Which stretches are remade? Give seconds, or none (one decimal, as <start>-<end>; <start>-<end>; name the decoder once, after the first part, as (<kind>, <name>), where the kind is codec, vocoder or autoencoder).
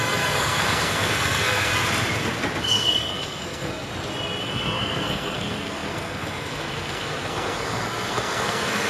0.0-1.7 (codec, SNAC); 2.6-3.9; 4.4-8.9